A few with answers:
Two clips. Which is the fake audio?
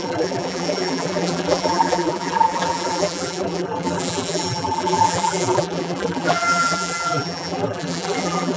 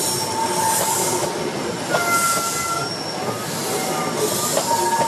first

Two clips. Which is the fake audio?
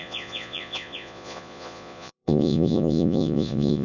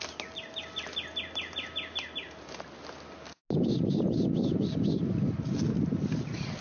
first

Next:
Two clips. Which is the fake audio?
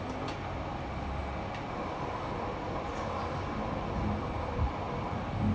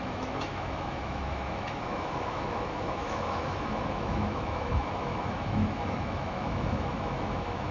second